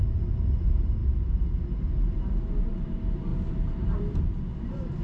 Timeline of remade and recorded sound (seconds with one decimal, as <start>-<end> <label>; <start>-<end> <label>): 0.0-5.0 remade